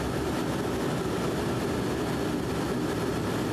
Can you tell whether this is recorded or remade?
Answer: recorded